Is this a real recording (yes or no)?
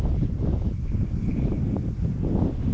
yes